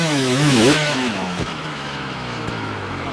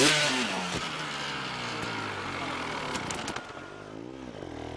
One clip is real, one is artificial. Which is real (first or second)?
second